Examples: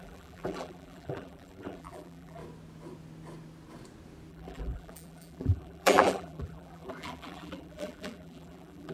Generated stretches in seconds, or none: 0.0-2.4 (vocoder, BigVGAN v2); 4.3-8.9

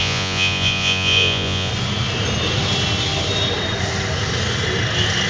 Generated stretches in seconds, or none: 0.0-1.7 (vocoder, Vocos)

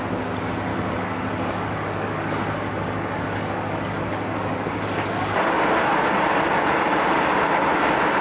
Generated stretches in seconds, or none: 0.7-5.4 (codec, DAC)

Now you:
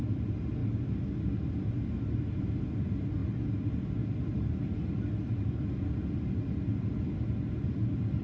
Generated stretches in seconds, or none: none

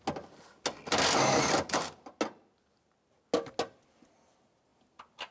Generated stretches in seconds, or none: none

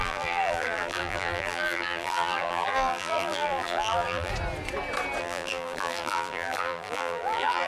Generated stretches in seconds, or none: 0.0-4.3 (vocoder, BigVGAN v2); 5.2-7.7